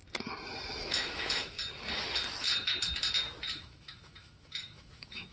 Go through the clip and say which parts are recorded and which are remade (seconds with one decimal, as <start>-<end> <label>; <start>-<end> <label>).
0.0-0.8 recorded; 0.8-1.6 remade; 1.6-3.5 recorded; 3.5-5.3 remade